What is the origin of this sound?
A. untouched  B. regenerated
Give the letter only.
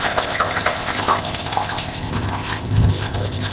B